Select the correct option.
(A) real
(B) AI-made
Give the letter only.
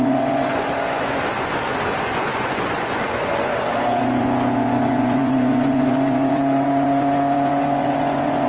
B